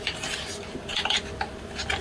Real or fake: real